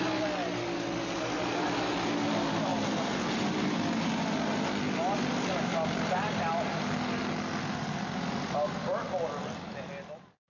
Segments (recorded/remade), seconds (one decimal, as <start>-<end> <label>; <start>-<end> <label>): 0.0-10.5 recorded